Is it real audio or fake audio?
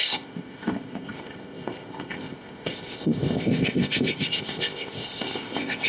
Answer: fake